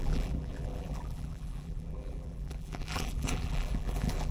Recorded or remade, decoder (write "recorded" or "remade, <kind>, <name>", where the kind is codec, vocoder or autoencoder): remade, vocoder, BigVGAN v2